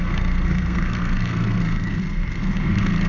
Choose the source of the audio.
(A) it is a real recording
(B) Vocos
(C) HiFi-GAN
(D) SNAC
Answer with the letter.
D